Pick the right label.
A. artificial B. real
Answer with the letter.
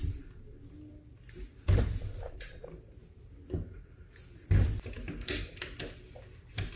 B